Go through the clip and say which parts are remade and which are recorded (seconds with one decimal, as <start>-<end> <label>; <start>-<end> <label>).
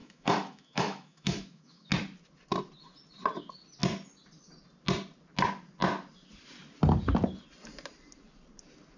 0.0-1.9 remade; 1.9-9.0 recorded